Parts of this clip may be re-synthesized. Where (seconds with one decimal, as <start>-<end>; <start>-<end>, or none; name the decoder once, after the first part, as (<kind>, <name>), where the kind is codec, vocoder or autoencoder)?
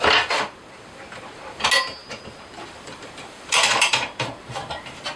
2.0-5.2 (vocoder, BigVGAN v2)